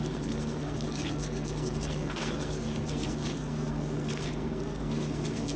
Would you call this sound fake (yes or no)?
yes